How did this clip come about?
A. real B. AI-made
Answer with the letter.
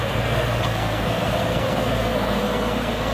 B